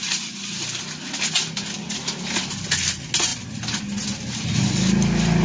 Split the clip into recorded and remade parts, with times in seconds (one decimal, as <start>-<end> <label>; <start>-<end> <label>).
0.0-5.4 recorded